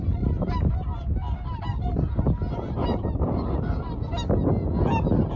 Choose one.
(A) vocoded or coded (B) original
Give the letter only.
B